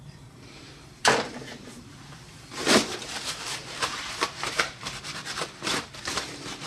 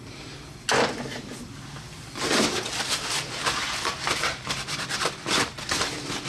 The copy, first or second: first